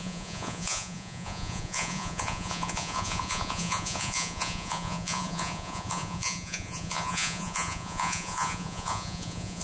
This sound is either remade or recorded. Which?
remade